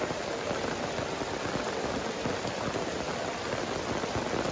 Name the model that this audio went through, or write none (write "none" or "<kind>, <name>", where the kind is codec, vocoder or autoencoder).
none